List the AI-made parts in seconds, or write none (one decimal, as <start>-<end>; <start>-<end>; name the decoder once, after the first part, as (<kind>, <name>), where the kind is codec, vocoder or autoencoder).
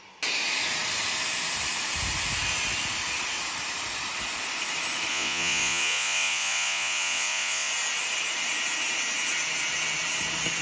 5.1-7.7 (vocoder, Vocos)